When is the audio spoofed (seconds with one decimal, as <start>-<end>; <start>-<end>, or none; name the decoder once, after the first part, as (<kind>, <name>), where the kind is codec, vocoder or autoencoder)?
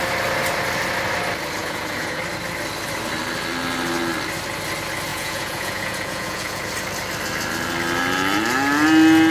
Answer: 1.6-2.2 (vocoder, Vocos); 5.1-6.7